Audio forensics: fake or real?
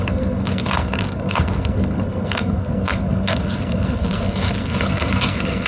fake